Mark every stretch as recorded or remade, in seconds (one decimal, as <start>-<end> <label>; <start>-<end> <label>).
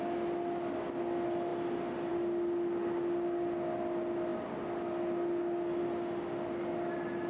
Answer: 0.0-7.3 recorded